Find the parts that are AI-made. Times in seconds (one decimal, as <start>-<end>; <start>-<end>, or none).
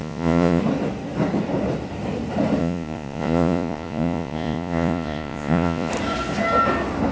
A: 0.0-0.6; 2.6-5.9